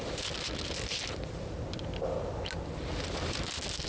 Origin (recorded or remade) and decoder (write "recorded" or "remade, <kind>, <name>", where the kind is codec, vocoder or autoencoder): recorded